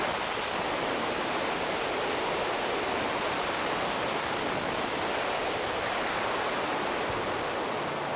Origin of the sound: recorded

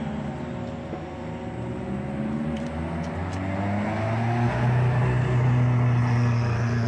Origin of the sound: recorded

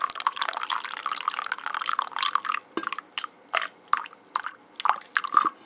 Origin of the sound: recorded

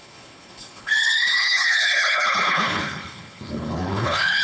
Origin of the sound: remade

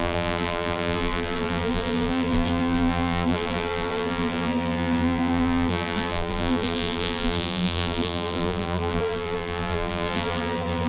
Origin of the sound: remade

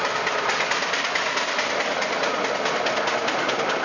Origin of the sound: recorded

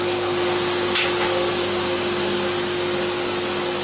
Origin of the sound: recorded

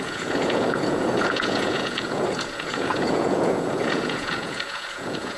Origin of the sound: remade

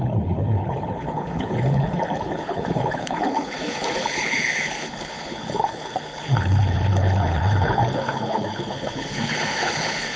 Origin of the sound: remade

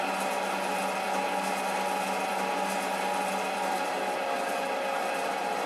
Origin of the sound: recorded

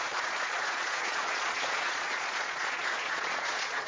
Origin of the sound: remade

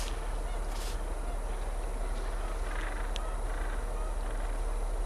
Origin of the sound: recorded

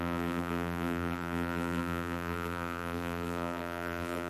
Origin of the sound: remade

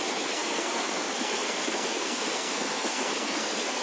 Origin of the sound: remade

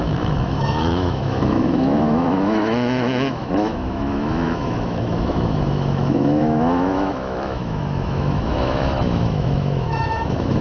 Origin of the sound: remade